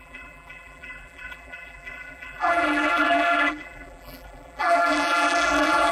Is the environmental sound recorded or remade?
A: remade